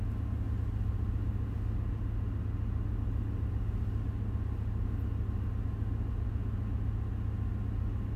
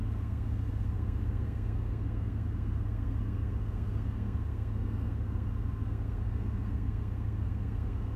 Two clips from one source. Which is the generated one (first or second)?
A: second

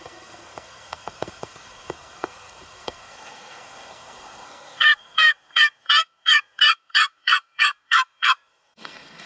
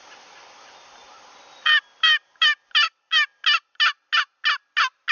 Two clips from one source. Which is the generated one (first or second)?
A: first